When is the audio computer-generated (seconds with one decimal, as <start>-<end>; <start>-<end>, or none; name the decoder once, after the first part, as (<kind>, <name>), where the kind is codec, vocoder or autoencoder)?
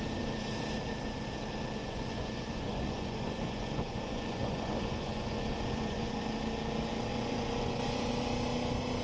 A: 1.8-6.2 (vocoder, Vocos); 7.1-8.1